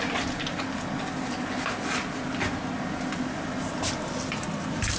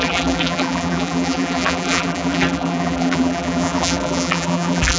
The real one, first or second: first